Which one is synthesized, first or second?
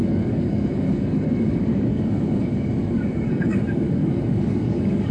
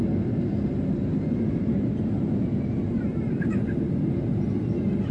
first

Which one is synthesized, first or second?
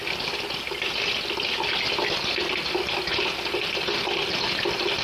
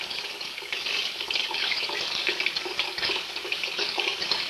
second